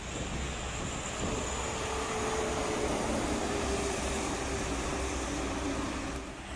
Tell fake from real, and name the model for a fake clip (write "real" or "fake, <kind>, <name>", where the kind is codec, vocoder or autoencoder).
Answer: real